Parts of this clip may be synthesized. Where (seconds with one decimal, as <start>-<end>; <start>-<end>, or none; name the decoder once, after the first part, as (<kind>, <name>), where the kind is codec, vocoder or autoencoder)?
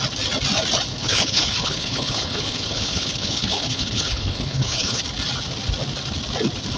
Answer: 0.9-5.0 (codec, HILCodec)